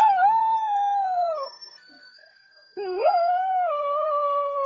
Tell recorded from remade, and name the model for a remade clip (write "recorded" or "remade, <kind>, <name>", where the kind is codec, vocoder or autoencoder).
remade, codec, SNAC